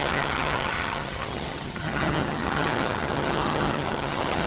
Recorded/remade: remade